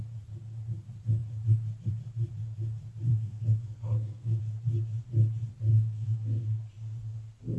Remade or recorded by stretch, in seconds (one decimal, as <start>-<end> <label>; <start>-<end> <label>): 0.0-3.1 recorded; 3.1-4.4 remade; 4.4-5.7 recorded; 5.7-6.6 remade; 6.6-7.6 recorded